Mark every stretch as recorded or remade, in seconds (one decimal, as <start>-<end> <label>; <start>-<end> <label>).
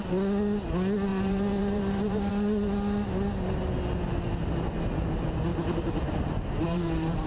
0.0-1.1 recorded; 1.1-2.3 remade; 2.3-5.5 recorded; 5.5-7.3 remade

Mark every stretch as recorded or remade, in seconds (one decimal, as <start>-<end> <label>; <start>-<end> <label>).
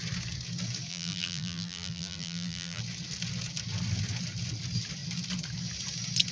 0.0-0.9 recorded; 0.9-2.8 remade; 2.8-6.3 recorded